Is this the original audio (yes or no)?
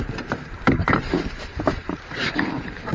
no